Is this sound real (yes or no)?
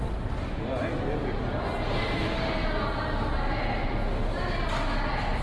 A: yes